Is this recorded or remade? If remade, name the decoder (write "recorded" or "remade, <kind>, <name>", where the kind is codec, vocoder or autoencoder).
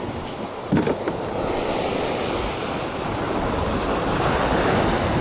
recorded